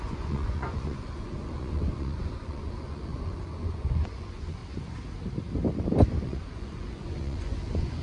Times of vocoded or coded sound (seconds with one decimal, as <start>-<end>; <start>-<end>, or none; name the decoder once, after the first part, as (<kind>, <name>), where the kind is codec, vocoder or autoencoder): 0.0-4.6 (vocoder, Vocos); 6.2-8.0